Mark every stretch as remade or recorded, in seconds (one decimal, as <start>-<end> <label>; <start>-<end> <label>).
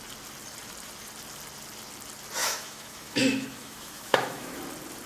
0.0-2.4 recorded; 2.4-4.6 remade; 4.6-5.1 recorded